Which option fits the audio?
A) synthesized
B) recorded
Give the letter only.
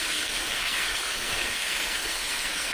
A